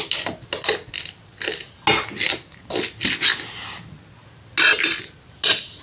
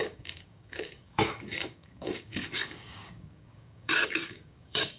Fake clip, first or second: second